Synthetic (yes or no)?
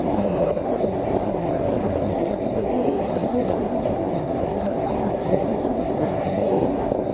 yes